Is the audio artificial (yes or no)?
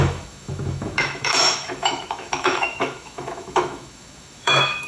yes